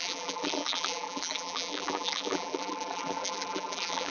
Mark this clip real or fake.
fake